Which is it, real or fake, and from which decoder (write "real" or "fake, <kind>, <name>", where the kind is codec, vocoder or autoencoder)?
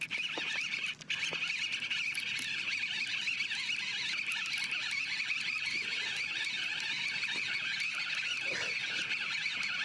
real